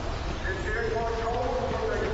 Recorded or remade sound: recorded